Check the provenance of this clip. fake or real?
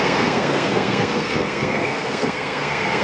fake